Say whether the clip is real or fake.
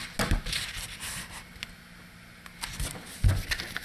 real